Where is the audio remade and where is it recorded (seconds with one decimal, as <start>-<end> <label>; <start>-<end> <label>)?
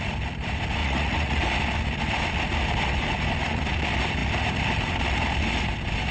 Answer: 0.0-0.8 recorded; 0.8-1.4 remade; 1.4-6.1 recorded